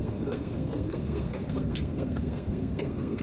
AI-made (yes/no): yes